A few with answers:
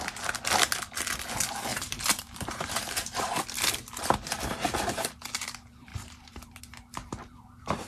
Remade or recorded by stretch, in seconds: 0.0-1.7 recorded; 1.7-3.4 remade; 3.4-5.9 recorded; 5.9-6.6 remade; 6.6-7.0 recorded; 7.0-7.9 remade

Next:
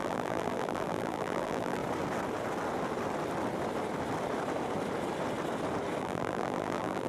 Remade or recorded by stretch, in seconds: 0.0-1.8 remade; 1.8-6.0 recorded; 6.0-7.1 remade

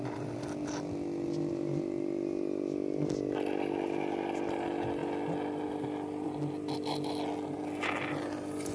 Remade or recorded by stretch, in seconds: 0.0-8.7 recorded